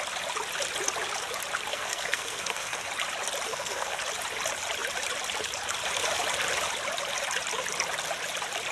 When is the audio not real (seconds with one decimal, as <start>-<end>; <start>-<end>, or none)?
1.7-2.9; 3.5-4.0